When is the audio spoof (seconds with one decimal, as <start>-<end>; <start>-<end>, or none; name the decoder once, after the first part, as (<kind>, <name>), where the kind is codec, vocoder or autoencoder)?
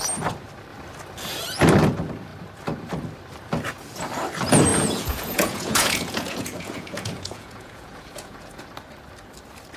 4.7-8.7 (vocoder, Vocos)